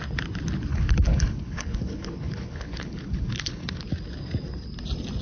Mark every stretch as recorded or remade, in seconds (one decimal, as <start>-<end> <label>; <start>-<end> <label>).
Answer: 0.0-0.7 recorded; 0.7-3.8 remade; 3.8-5.2 recorded